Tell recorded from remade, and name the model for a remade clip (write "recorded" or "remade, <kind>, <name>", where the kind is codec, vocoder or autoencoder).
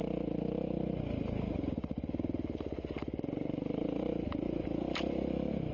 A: recorded